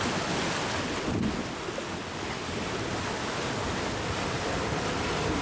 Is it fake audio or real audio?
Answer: real